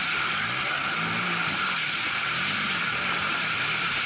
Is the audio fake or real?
real